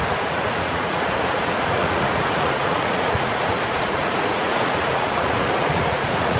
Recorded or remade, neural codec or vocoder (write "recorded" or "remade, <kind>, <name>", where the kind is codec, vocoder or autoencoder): remade, vocoder, Vocos